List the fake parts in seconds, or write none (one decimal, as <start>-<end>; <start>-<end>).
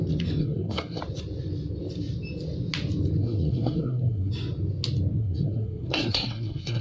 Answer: 0.4-1.0; 3.2-4.3; 5.2-6.8